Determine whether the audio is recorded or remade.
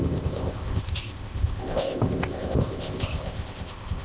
remade